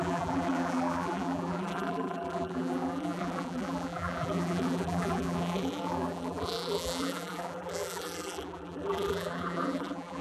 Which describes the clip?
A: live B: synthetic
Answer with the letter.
B